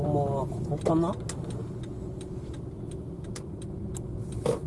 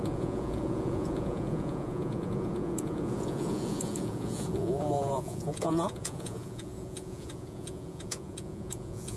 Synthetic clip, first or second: second